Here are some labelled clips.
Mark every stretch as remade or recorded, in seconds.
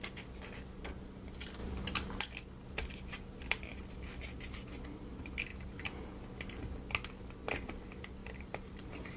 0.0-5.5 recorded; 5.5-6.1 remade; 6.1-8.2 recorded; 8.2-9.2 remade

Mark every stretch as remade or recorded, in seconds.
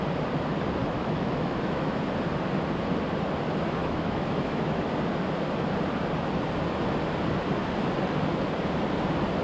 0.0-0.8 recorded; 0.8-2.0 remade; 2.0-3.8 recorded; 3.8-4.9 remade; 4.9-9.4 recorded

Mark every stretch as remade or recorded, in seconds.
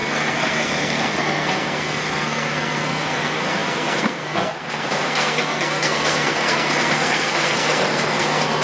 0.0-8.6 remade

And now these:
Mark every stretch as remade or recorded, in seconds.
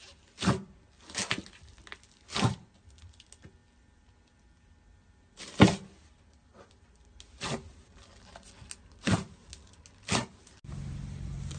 0.0-11.6 recorded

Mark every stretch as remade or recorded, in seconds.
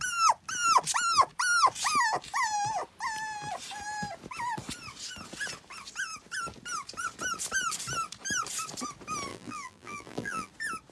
0.0-9.3 recorded; 9.3-10.5 remade; 10.5-10.9 recorded